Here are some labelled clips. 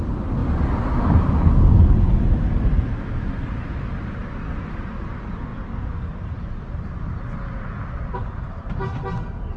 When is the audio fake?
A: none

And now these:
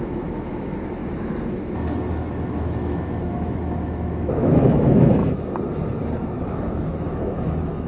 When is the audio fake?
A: 0.0-1.0 (autoencoder, DAC-VAE); 2.3-5.2; 6.5-7.9

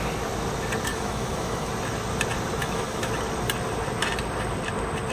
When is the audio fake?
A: 0.9-1.7 (autoencoder, DAC-VAE); 2.6-3.1

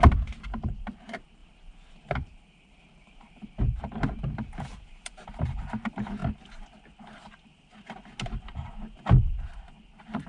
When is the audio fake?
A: 0.0-6.2 (vocoder, BigVGAN v2); 9.9-10.3

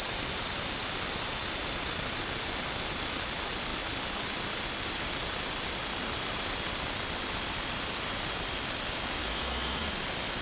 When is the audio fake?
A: 9.2-9.9 (autoencoder, DAC-VAE)

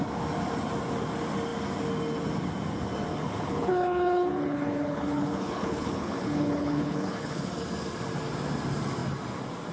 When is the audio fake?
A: 3.1-7.5 (codec, HILCodec)

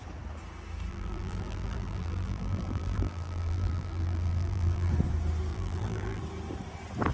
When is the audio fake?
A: 0.9-4.9 (vocoder, BigVGAN v2); 5.5-6.2

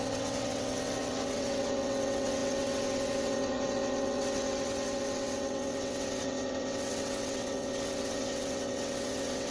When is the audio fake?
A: 0.0-9.5 (vocoder, WaveNeXt)